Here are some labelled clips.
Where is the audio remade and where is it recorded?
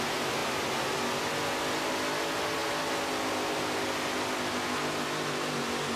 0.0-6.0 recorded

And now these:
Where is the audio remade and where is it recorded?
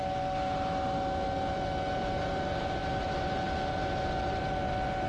0.0-5.1 recorded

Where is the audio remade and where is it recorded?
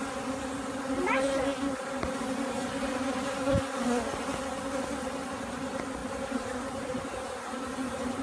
0.0-6.0 recorded; 6.0-8.2 remade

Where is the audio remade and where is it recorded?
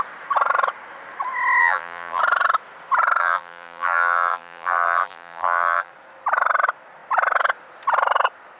0.0-1.6 recorded; 1.6-2.2 remade; 2.2-3.2 recorded; 3.2-5.9 remade; 5.9-8.6 recorded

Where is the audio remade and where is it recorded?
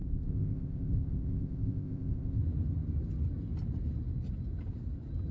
0.0-2.4 remade; 2.4-5.3 recorded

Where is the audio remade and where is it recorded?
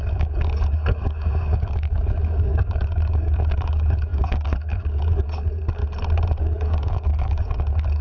0.0-5.8 remade; 5.8-6.4 recorded; 6.4-8.0 remade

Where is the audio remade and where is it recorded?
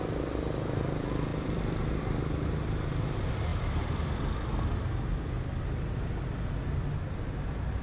0.0-1.3 recorded; 1.3-2.2 remade; 2.2-3.5 recorded; 3.5-4.5 remade; 4.5-7.8 recorded